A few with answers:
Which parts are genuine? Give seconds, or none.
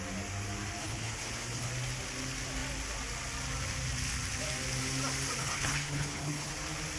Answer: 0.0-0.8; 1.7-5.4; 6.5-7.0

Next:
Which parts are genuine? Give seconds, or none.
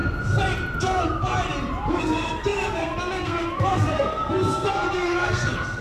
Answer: 0.0-0.8; 1.3-1.9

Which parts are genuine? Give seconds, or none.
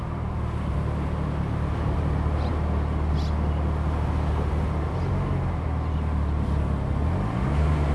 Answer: 0.0-7.9